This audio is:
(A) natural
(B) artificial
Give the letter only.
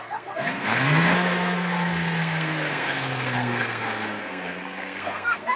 B